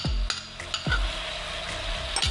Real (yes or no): yes